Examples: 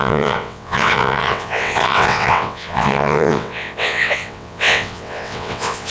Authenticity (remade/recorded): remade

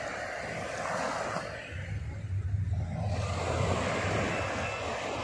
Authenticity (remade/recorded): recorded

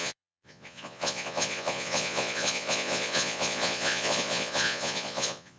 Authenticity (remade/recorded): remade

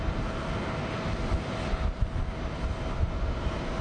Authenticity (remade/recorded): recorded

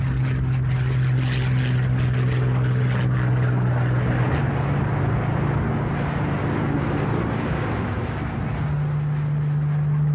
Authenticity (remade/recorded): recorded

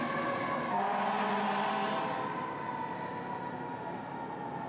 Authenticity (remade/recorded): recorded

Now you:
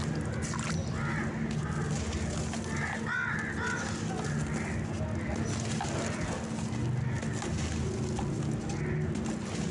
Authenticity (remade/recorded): recorded